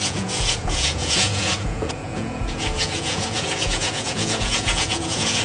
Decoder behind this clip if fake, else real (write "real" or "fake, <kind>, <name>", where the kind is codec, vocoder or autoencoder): fake, vocoder, Vocos